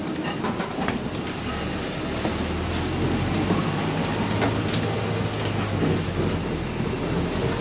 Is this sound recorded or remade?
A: recorded